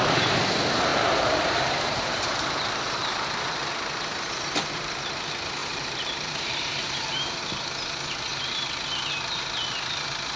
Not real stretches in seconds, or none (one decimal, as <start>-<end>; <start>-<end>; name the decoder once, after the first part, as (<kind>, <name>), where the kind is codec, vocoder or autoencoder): 0.9-3.7 (vocoder, BigVGAN v2); 5.6-7.4